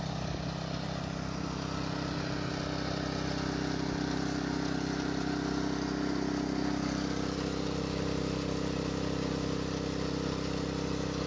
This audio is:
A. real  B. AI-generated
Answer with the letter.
A